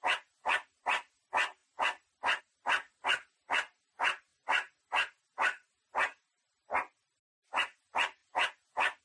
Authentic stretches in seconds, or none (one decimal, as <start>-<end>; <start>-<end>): 0.0-9.0